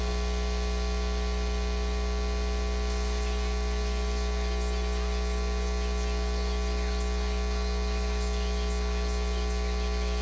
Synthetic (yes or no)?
no